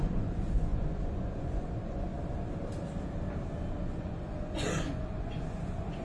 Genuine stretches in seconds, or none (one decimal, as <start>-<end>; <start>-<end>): 2.1-3.8